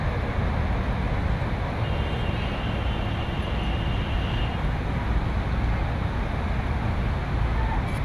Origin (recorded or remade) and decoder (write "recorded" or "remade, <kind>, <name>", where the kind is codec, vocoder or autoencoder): recorded